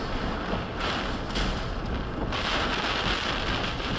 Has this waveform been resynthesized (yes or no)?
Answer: no